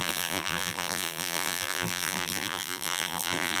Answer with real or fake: fake